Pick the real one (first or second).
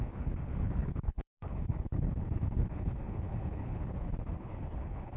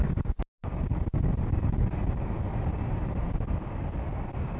second